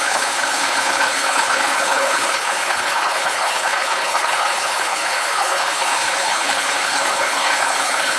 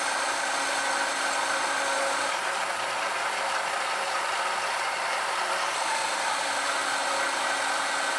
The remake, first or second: first